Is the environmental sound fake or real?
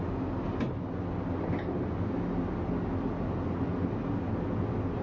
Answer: real